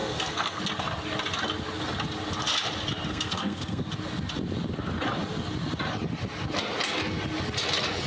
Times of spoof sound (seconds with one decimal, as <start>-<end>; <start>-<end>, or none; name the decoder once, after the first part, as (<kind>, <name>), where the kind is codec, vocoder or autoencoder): 0.0-0.6 (codec, SNAC); 3.1-3.9